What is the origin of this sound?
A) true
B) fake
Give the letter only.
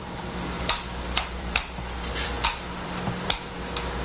B